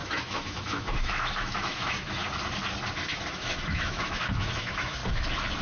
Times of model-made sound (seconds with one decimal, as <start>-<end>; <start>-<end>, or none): 0.0-2.2; 3.3-5.0